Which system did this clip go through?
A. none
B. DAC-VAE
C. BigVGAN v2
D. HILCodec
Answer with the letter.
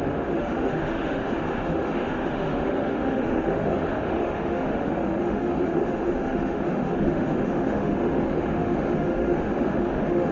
B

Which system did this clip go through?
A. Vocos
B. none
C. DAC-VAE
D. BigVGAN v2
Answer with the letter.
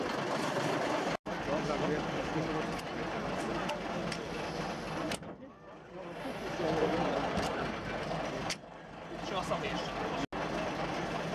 B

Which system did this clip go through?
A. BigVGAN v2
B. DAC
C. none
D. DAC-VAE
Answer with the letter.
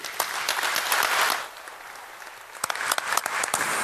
C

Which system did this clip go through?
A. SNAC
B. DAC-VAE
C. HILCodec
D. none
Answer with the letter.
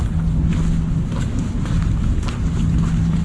D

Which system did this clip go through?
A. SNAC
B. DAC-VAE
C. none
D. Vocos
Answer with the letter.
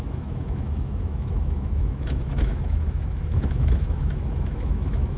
B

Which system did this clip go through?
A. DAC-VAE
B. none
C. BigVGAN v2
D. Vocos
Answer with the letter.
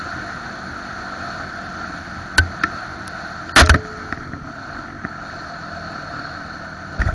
B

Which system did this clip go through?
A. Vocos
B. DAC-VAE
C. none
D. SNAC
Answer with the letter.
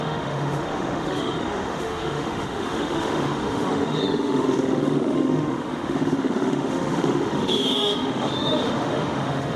B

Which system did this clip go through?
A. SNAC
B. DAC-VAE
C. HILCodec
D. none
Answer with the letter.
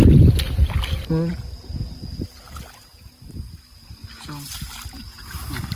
D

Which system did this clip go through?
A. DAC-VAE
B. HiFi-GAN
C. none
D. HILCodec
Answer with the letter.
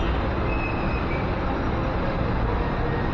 C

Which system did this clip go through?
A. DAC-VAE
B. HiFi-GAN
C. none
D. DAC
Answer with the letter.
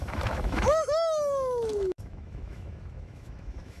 A